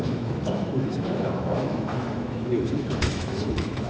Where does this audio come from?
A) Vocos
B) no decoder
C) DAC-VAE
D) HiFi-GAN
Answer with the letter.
C